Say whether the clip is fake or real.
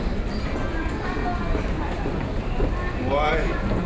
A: real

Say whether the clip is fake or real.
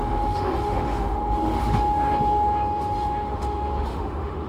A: fake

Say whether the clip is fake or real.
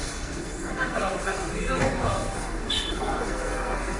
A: fake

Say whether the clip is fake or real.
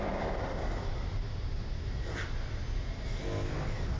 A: real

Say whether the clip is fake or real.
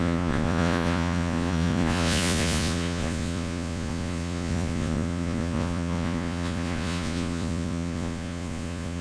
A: fake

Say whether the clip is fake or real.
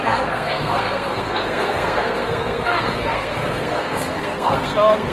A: fake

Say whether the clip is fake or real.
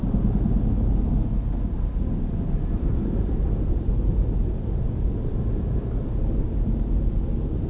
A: real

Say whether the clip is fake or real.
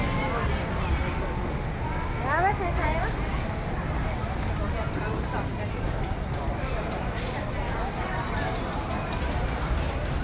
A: real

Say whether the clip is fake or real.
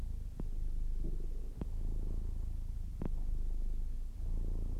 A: real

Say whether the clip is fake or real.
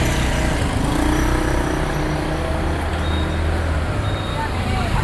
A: real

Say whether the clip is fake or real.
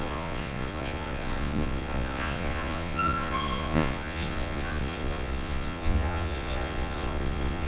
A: fake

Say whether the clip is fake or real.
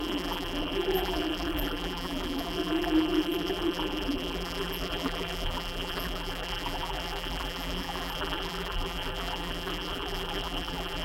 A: fake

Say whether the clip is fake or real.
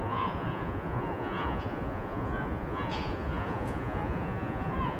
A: fake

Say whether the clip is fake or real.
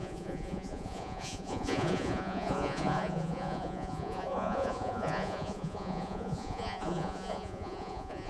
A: fake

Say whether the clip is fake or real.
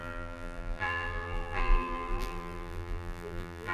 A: fake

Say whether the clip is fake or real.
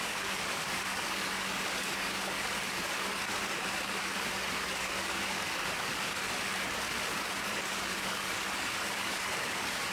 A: fake